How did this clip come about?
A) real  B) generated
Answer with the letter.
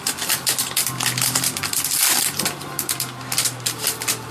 A